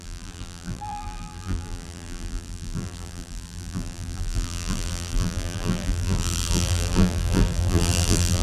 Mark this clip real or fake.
fake